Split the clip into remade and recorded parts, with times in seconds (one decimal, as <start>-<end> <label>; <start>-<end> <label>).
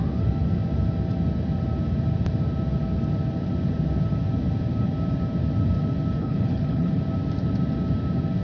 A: 0.0-6.2 recorded; 6.2-7.0 remade; 7.0-8.4 recorded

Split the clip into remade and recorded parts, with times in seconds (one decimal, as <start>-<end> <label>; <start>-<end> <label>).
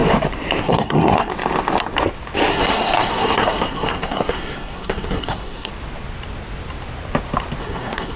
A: 0.0-0.6 recorded; 0.6-1.3 remade; 1.3-2.5 recorded; 2.5-5.7 remade; 5.7-7.6 recorded; 7.6-8.2 remade